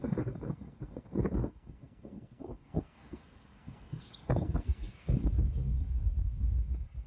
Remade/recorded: remade